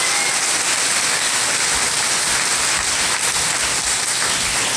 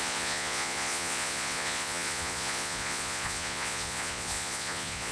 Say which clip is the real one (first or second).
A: first